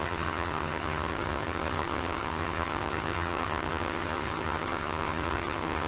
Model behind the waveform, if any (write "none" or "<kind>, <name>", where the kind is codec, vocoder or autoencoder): vocoder, HiFi-GAN